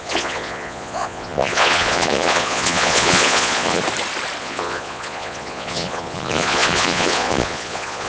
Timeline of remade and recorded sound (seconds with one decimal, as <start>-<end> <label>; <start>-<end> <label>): 0.0-3.8 remade; 3.8-4.4 recorded; 4.4-8.1 remade